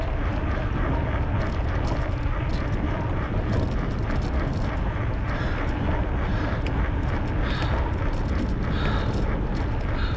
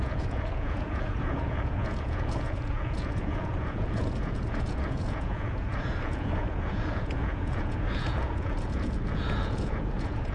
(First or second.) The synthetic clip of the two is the second